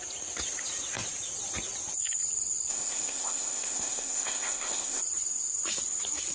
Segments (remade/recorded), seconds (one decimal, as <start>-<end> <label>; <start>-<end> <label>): 0.0-2.7 recorded; 2.7-5.0 remade; 5.0-6.3 recorded